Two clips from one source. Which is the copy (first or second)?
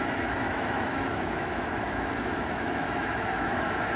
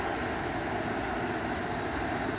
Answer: first